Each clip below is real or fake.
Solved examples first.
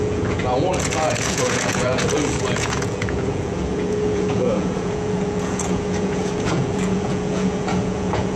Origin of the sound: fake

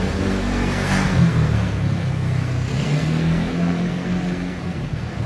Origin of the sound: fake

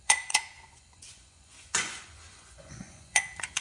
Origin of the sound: fake